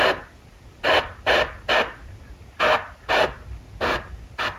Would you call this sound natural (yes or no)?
yes